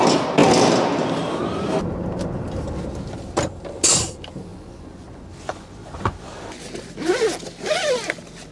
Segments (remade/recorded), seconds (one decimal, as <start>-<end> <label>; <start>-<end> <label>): 0.0-4.5 recorded; 4.5-6.6 remade; 6.6-8.5 recorded